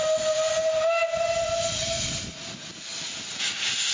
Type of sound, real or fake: real